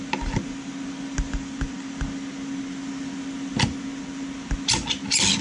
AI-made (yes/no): no